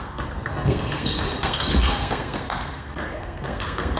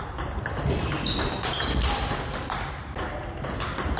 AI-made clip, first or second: first